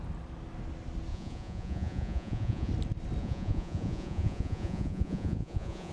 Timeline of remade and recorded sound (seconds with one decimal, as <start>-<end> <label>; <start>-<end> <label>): 0.0-1.1 recorded; 1.1-2.7 remade; 2.7-3.2 recorded; 3.2-5.9 remade